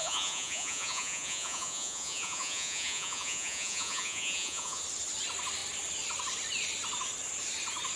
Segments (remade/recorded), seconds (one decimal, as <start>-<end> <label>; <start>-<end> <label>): 0.0-4.8 remade; 4.8-8.0 recorded